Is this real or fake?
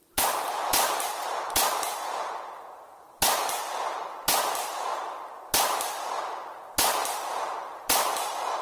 real